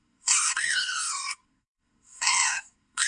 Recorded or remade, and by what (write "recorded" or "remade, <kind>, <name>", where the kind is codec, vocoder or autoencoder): remade, codec, SNAC